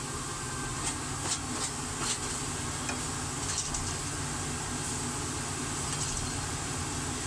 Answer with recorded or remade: recorded